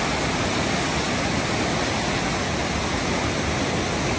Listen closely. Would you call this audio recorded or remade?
recorded